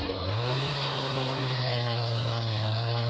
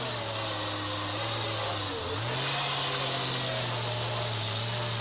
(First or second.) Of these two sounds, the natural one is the second